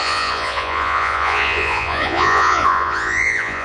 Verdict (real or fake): fake